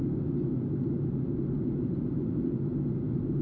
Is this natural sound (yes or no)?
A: yes